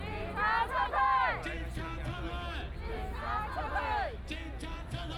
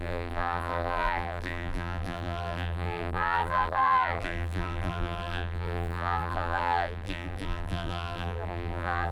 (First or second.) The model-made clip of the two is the second